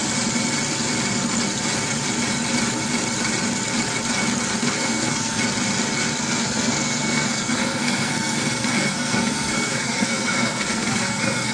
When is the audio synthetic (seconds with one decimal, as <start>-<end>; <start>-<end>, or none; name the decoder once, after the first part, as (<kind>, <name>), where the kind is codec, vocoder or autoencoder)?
4.6-5.4 (codec, SNAC); 6.2-11.5

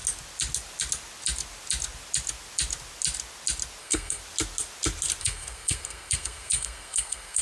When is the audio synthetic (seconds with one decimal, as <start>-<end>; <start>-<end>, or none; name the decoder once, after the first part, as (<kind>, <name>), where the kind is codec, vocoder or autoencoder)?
3.8-4.2 (codec, SNAC); 5.2-7.4